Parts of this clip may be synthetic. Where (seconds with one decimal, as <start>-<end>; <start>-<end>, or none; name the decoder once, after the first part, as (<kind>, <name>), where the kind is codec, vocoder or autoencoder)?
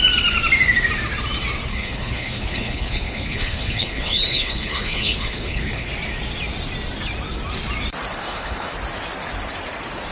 1.7-5.9 (codec, HILCodec); 8.2-8.7